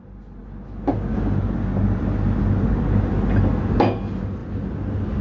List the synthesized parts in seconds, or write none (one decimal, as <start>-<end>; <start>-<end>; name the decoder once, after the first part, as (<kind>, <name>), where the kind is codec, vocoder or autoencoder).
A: none

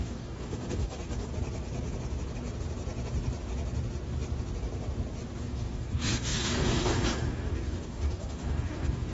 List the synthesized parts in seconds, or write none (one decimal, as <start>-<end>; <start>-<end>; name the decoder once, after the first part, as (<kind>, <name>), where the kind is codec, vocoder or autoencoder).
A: 0.0-1.3 (codec, DAC); 5.5-9.1

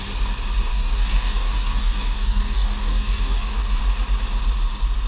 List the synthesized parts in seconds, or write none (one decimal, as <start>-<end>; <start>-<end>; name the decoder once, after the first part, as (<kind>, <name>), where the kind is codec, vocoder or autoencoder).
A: 0.7-3.8 (codec, DAC)

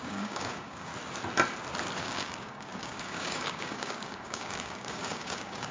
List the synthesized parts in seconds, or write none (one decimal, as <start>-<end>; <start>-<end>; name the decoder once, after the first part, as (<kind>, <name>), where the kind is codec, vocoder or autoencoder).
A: 0.0-0.9 (codec, DAC); 2.0-5.7

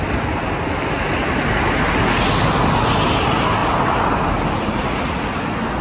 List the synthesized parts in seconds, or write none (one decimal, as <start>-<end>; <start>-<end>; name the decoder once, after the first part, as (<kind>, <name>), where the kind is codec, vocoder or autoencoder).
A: none

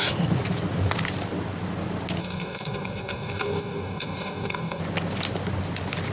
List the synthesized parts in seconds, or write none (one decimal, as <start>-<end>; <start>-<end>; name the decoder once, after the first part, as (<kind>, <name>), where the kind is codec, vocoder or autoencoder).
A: 2.2-4.8 (codec, DAC)

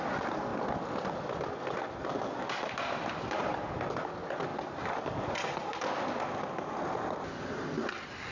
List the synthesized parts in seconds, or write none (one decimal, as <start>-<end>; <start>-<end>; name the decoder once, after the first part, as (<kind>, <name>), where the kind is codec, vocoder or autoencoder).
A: none

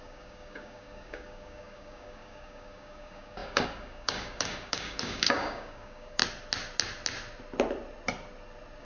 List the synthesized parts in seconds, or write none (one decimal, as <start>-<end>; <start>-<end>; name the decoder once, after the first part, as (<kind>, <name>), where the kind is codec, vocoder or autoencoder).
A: 0.0-6.2 (codec, DAC)